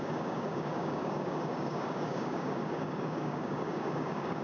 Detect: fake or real fake